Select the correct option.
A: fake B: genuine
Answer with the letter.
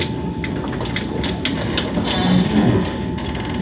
B